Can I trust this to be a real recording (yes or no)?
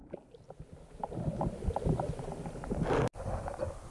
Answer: yes